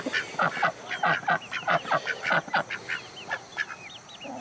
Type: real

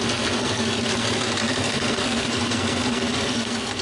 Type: fake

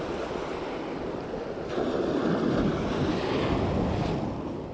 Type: real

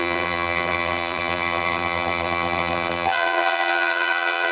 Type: fake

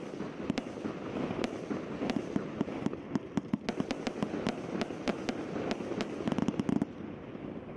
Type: real